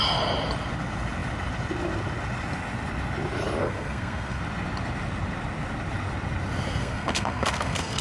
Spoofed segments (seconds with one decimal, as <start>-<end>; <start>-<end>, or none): 3.6-4.4; 6.8-8.0

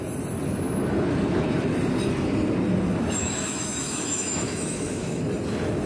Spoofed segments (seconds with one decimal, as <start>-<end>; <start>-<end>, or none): 3.2-5.2

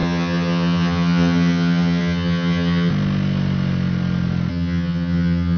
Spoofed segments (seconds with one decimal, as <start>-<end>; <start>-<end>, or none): 0.0-2.9; 4.5-5.6

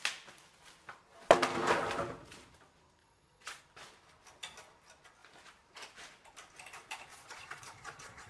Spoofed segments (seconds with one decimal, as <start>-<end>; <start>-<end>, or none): 3.0-3.6; 7.1-8.3

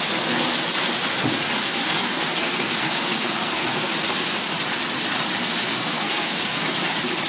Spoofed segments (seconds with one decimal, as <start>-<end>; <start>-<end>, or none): 1.6-3.9; 5.6-6.6

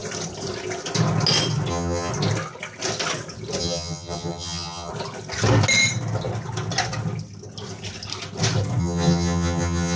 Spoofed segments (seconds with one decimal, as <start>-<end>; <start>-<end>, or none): 1.7-2.1; 3.6-4.9; 8.8-10.0

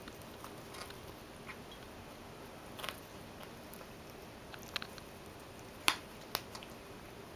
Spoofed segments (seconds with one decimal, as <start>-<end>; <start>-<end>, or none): none

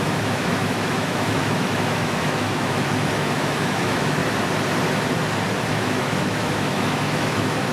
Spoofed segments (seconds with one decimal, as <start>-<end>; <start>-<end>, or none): 0.0-4.2; 5.7-7.7